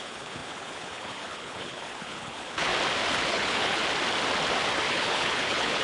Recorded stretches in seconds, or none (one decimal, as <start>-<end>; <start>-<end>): 2.7-3.3; 3.8-4.9